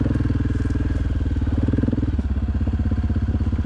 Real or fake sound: real